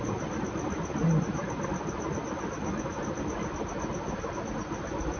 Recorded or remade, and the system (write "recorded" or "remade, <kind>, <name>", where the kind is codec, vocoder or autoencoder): recorded